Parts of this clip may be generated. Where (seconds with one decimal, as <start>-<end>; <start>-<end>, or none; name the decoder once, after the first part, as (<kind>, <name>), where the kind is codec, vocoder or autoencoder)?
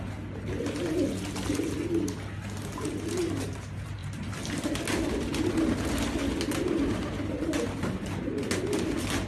4.0-4.7 (vocoder, BigVGAN v2)